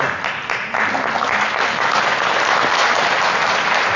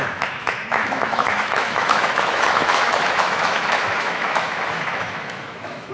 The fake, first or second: second